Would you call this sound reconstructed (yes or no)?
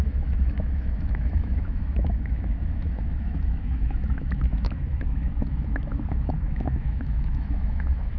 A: yes